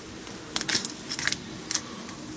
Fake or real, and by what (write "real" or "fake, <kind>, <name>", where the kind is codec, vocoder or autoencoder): real